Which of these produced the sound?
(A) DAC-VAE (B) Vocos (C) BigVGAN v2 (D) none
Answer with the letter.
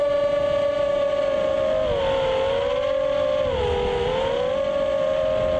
D